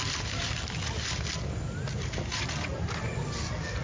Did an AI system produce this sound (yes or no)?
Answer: no